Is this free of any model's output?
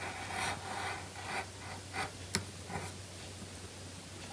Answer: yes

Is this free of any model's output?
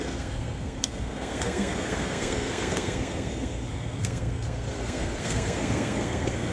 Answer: no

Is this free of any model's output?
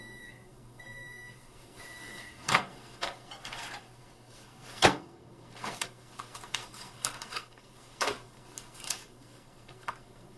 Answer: no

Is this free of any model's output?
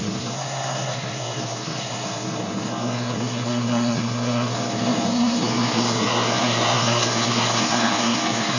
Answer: no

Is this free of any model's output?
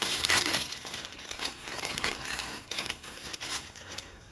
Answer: no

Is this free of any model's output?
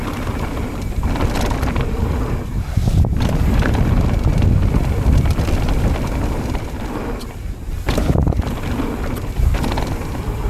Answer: yes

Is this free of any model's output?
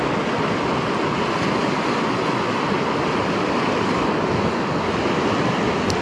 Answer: yes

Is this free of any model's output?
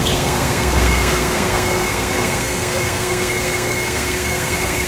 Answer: no